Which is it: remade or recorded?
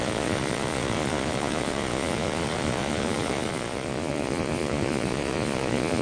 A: remade